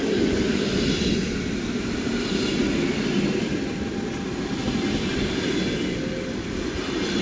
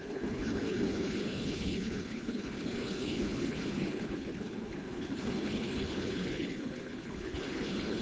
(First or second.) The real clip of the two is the first